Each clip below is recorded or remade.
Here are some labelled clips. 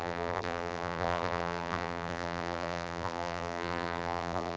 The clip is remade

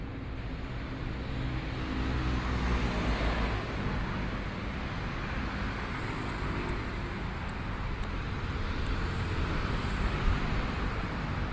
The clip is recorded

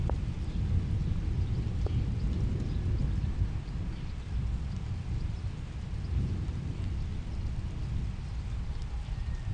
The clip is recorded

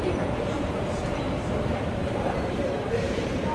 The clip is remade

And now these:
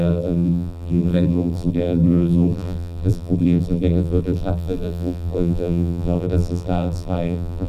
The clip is remade